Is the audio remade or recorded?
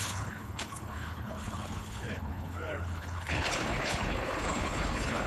remade